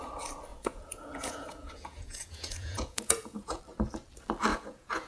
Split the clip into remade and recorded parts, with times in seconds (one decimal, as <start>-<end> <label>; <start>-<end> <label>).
0.0-0.5 recorded; 0.5-3.6 remade; 3.6-4.5 recorded; 4.5-5.1 remade

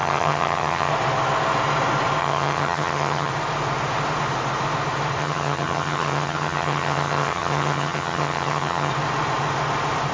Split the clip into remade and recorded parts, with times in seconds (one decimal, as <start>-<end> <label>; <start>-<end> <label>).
0.0-0.9 remade; 0.9-2.2 recorded; 2.2-3.3 remade; 3.3-5.2 recorded; 5.2-8.9 remade; 8.9-10.1 recorded